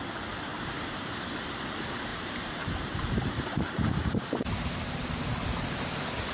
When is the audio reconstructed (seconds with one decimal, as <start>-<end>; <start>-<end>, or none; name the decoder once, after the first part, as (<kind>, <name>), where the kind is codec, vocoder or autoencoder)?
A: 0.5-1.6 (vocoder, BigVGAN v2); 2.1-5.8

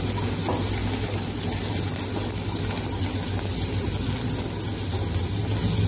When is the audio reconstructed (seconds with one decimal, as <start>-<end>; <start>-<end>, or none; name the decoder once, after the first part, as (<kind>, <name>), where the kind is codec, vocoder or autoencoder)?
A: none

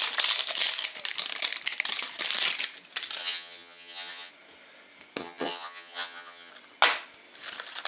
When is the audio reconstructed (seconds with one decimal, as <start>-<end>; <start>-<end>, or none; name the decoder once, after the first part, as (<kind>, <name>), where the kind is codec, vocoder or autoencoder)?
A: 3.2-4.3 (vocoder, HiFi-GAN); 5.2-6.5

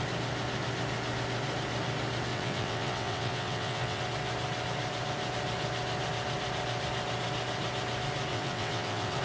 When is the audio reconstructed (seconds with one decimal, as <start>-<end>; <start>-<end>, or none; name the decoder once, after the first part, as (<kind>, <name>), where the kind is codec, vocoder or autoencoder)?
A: 2.3-4.0 (vocoder, WaveNeXt); 8.3-9.2

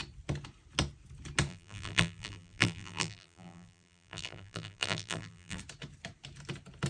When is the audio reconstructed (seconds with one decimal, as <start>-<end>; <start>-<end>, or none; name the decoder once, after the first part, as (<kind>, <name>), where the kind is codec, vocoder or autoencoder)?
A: 1.5-5.6 (vocoder, BigVGAN v2)